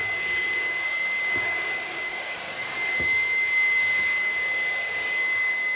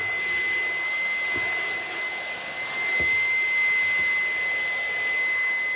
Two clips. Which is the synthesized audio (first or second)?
first